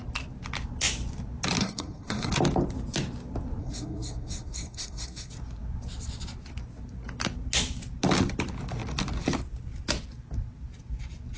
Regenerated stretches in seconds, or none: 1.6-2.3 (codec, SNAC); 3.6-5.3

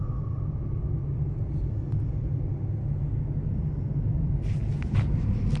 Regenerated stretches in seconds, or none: none

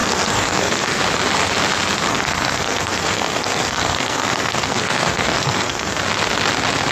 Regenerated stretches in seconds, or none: 0.0-1.0 (codec, SNAC); 2.1-6.0

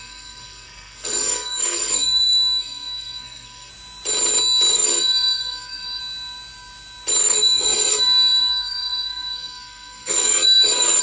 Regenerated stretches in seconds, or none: 0.0-3.7 (codec, SNAC); 4.7-6.0; 7.2-11.0

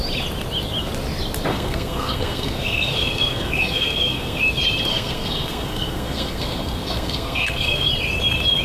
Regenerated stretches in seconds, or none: 1.5-4.4 (codec, SNAC); 4.9-7.9

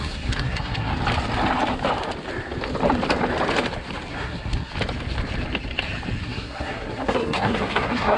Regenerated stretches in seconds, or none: 0.0-0.9 (codec, SNAC); 4.1-4.7; 6.2-8.2

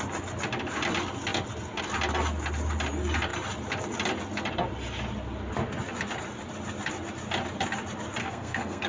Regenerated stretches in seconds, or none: 8.2-8.9 (codec, SNAC)

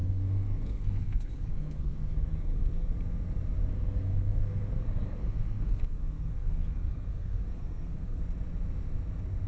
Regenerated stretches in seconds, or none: 0.0-2.9 (codec, SNAC); 3.7-8.2